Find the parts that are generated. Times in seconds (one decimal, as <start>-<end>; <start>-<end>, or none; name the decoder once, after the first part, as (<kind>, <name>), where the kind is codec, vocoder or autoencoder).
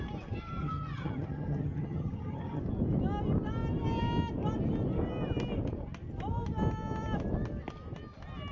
0.6-2.6 (vocoder, HiFi-GAN)